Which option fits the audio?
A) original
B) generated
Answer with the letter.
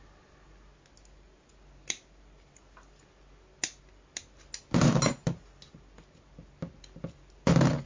A